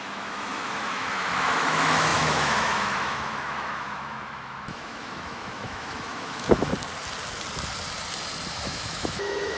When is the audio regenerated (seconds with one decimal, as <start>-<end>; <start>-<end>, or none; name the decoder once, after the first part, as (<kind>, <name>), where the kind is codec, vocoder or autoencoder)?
0.0-6.7 (autoencoder, DAC-VAE); 8.5-9.6